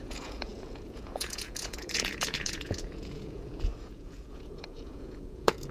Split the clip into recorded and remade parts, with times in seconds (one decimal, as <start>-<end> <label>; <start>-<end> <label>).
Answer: 0.0-5.7 remade